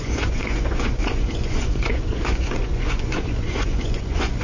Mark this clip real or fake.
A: fake